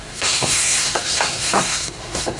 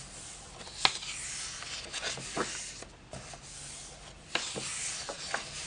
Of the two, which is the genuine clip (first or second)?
second